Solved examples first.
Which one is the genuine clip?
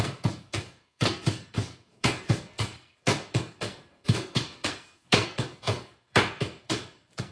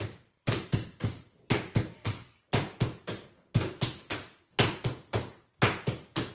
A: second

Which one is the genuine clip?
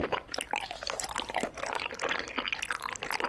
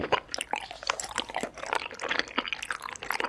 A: second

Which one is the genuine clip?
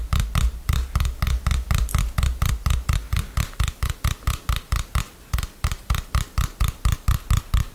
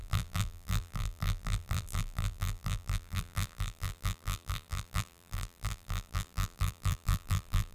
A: first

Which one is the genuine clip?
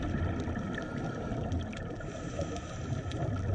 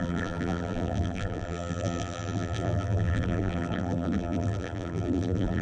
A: first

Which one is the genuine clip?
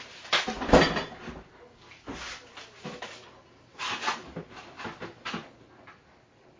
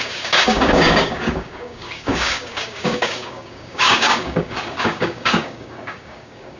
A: first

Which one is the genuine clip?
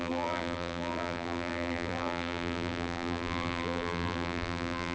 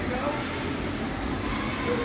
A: second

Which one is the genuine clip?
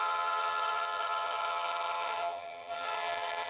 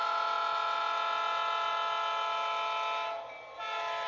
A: second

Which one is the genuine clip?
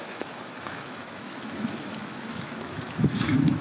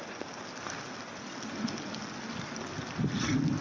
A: second